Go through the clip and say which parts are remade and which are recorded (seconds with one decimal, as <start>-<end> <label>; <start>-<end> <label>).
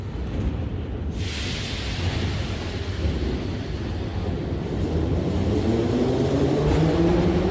0.0-7.5 recorded